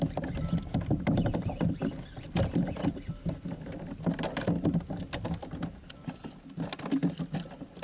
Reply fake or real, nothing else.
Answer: real